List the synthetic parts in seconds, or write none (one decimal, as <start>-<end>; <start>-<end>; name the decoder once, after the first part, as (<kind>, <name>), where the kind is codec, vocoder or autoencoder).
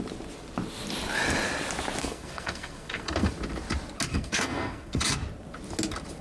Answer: 2.0-3.3 (codec, SNAC); 4.1-5.1